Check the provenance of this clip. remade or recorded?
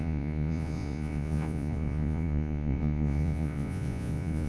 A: remade